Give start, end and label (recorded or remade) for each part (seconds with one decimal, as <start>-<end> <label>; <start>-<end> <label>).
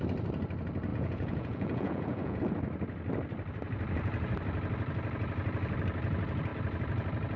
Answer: 0.0-0.9 recorded; 0.9-2.4 remade; 2.4-7.4 recorded